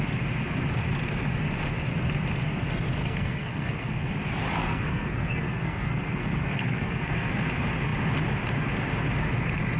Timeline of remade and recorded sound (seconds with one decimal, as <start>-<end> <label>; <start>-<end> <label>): 0.0-3.0 recorded; 3.0-4.1 remade; 4.1-4.6 recorded; 4.6-7.4 remade; 7.4-9.8 recorded